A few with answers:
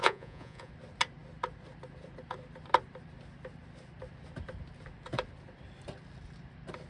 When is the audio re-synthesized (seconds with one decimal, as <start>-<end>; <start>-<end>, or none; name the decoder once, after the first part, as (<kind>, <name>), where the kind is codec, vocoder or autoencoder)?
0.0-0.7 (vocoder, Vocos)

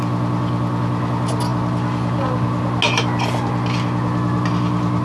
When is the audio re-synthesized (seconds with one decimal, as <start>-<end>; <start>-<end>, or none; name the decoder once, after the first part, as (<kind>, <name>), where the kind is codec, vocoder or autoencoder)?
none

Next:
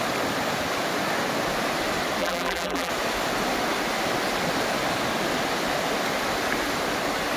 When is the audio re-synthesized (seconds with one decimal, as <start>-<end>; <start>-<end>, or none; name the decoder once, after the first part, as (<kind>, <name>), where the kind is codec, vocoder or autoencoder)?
2.2-2.9 (vocoder, BigVGAN v2)